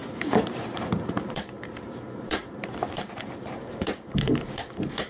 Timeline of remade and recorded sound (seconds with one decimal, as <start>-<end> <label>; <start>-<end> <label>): 0.0-5.1 remade